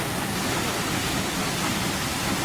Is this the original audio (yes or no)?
yes